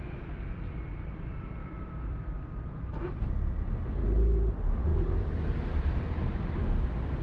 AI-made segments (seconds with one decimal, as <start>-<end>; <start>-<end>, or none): 1.6-2.9